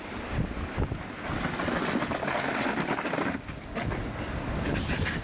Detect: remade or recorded recorded